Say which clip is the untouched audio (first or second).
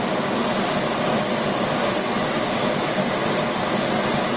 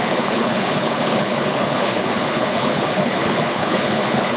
first